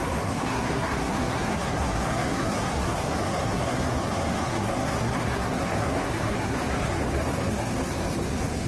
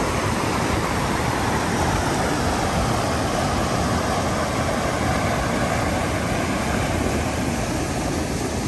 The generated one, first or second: first